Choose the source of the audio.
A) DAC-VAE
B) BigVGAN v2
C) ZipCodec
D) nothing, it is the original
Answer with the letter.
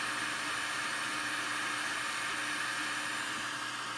D